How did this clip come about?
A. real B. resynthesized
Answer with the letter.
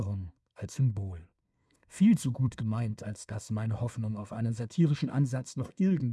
B